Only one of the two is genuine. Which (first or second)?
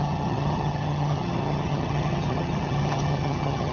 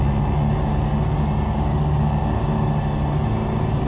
second